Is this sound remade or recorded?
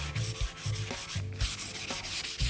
recorded